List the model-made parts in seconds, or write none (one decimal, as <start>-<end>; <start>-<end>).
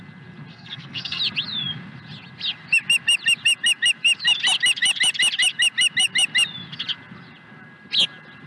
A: 0.5-1.2